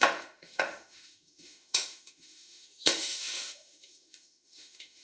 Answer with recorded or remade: remade